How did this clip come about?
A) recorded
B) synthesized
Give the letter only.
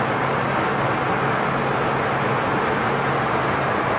A